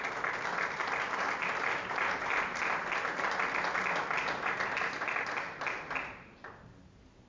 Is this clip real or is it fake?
real